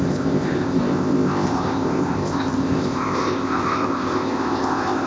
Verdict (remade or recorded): remade